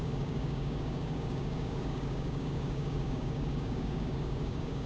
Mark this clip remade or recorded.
remade